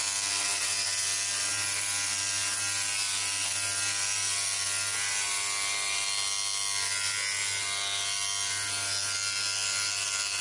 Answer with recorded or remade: recorded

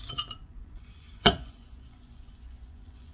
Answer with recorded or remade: remade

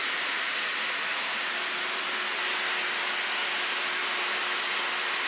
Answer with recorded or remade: recorded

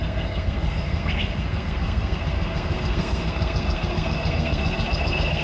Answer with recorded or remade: remade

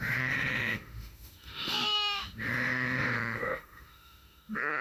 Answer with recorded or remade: remade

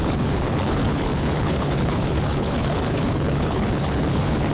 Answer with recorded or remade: remade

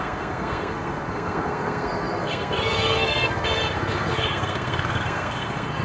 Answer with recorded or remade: remade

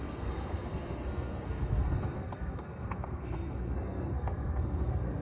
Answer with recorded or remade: remade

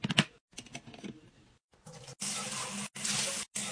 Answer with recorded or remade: recorded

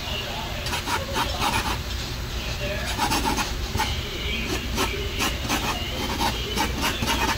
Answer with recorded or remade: recorded